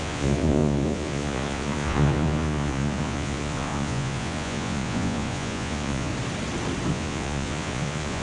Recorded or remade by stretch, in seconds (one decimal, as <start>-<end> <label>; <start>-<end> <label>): 0.0-6.1 remade; 6.1-6.9 recorded; 6.9-8.2 remade